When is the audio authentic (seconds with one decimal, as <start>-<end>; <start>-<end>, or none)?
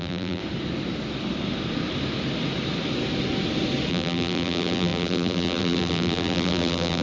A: 0.4-3.9